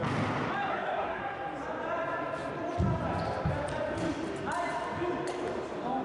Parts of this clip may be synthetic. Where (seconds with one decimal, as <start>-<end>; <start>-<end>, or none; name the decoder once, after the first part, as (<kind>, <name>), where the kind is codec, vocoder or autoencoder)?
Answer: 0.7-1.2 (codec, SNAC)